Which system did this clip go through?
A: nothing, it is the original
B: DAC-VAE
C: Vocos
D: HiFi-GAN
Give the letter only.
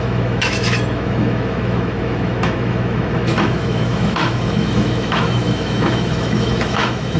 B